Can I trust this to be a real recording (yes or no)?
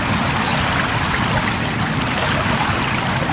yes